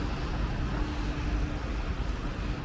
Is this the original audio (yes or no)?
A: yes